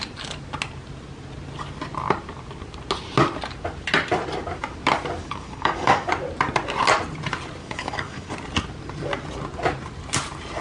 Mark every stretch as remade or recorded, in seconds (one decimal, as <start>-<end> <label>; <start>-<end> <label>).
0.0-5.2 recorded; 5.2-6.1 remade; 6.1-7.6 recorded; 7.6-8.3 remade; 8.3-10.6 recorded